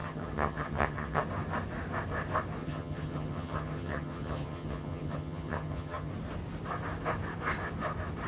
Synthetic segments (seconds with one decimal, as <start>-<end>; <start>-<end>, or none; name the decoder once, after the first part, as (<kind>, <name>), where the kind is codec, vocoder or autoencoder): 0.0-1.2 (vocoder, HiFi-GAN); 2.6-6.1

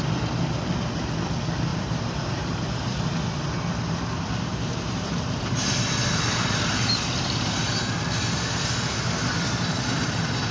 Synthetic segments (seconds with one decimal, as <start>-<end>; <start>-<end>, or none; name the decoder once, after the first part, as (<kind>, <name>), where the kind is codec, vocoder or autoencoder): 1.7-3.0 (vocoder, BigVGAN v2); 4.5-7.6

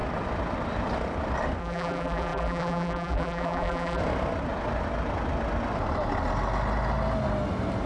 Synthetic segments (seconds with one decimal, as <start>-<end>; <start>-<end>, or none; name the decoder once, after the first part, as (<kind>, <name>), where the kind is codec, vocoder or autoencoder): 1.6-4.0 (vocoder, BigVGAN v2)

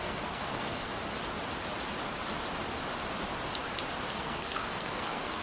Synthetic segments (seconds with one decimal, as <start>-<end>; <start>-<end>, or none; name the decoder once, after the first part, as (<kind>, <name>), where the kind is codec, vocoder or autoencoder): 0.0-0.9 (codec, SNAC); 4.1-5.4

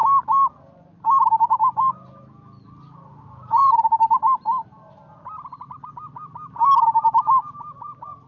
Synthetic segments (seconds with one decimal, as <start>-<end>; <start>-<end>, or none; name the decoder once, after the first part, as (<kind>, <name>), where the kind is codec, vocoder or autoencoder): none

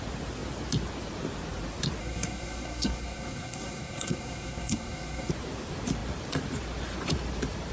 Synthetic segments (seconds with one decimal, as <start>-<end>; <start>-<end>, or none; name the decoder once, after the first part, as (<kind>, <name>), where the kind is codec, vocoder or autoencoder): 2.0-5.3 (codec, SNAC)

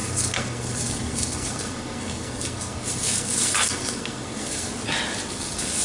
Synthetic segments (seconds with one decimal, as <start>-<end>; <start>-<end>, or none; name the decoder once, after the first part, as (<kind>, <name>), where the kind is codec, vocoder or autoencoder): 0.0-4.7 (codec, SNAC); 5.3-5.8